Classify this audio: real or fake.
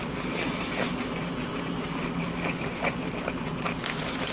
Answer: real